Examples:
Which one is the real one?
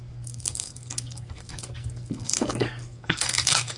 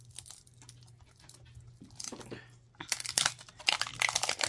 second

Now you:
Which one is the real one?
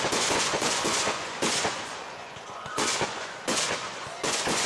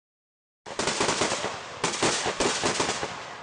second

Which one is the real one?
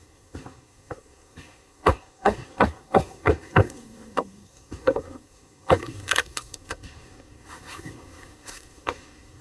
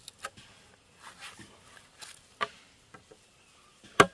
second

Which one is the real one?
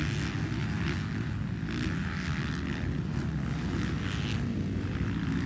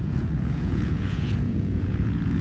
first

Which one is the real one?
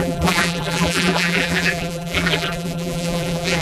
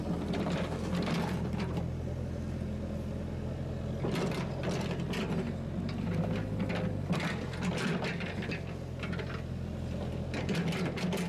second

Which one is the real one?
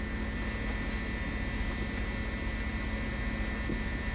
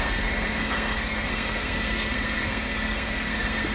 first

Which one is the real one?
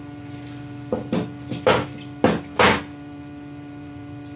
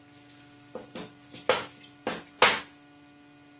second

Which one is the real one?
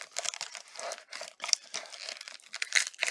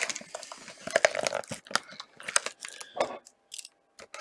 second